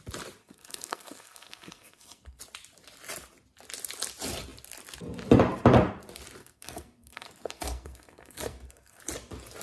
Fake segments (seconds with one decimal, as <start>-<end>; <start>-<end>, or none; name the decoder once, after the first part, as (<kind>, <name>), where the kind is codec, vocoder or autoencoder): 0.4-2.4 (codec, SNAC); 6.4-9.0